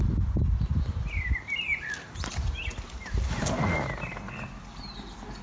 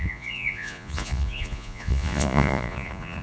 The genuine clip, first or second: first